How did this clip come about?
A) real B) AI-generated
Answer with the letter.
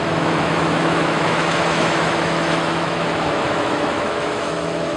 B